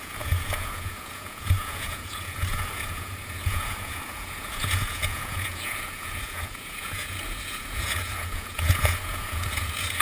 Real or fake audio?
fake